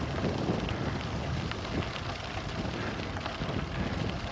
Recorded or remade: recorded